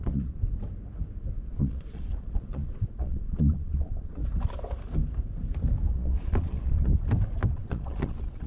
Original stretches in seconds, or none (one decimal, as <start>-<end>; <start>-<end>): 0.4-1.5; 4.2-5.9; 6.9-7.5